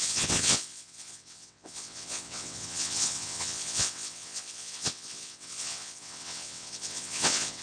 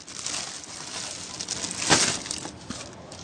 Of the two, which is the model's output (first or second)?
first